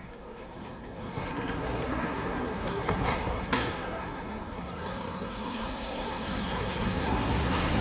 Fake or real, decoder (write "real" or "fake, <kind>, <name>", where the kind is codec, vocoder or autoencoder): fake, codec, SNAC